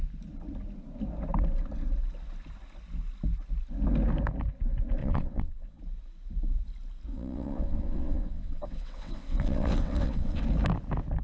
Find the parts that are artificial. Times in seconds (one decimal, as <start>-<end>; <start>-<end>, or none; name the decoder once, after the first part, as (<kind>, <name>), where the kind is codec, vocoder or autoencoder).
5.0-5.8 (vocoder, WaveNeXt); 7.1-10.4